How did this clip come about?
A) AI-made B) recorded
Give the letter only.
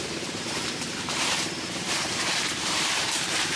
A